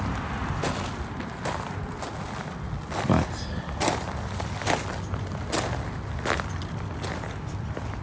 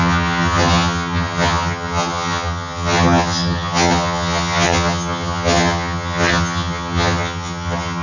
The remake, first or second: second